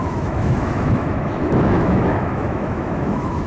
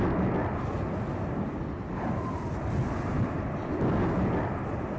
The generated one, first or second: first